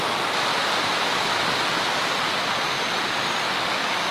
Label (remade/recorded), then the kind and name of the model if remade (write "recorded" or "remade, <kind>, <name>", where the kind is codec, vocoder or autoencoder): recorded